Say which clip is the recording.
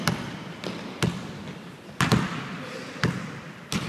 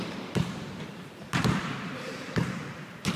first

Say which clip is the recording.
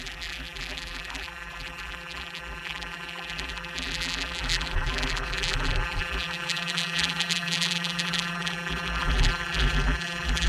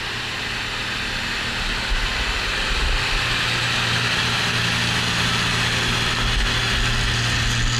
second